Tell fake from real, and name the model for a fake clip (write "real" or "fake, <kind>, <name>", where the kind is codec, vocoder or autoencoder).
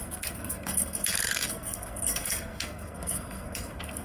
fake, codec, SNAC